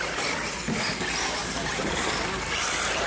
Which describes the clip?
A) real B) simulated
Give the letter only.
A